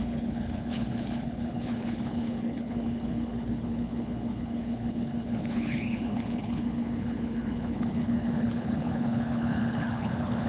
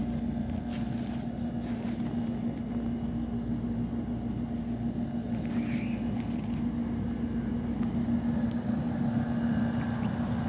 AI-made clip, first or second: first